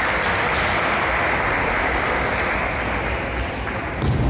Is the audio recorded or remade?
recorded